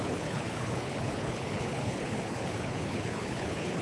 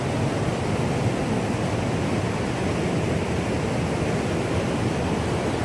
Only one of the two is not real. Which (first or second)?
first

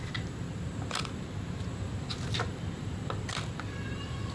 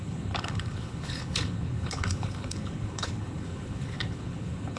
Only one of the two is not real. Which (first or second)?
second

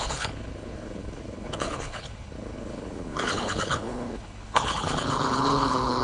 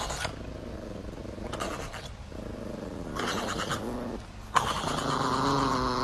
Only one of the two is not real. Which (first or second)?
first